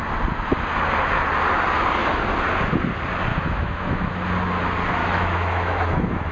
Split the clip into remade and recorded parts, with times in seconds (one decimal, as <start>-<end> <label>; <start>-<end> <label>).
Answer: 0.0-3.3 recorded; 3.3-4.1 remade; 4.1-5.0 recorded; 5.0-6.3 remade